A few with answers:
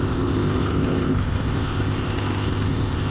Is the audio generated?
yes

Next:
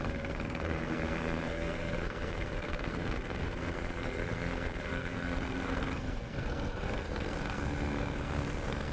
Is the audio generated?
yes